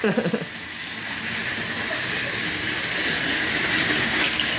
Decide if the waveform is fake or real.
real